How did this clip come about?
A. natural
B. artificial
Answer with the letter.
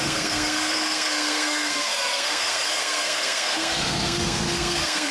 B